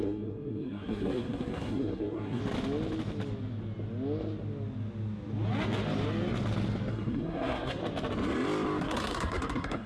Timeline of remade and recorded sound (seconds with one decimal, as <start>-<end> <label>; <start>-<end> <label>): 0.0-2.4 remade; 2.4-6.9 recorded; 6.9-7.8 remade; 7.8-8.8 recorded; 8.8-9.9 remade